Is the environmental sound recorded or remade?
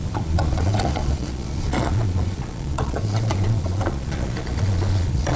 remade